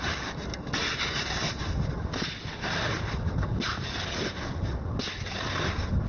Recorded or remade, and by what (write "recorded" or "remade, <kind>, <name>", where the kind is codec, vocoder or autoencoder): recorded